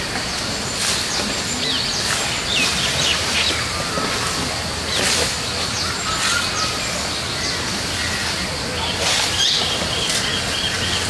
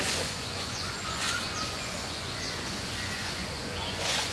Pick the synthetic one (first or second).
second